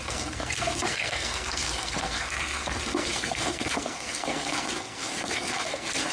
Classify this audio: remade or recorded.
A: remade